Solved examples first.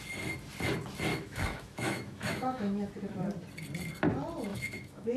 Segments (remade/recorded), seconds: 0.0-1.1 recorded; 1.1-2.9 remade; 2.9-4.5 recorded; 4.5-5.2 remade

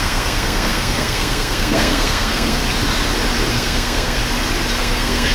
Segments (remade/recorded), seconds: 0.0-2.6 remade; 2.6-3.5 recorded; 3.5-4.2 remade; 4.2-4.8 recorded; 4.8-5.3 remade

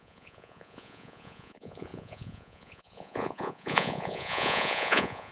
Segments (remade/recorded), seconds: 0.0-5.3 remade